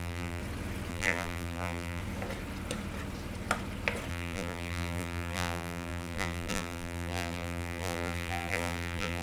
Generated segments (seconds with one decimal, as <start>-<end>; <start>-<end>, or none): 0.0-0.4; 0.9-2.0; 4.1-9.2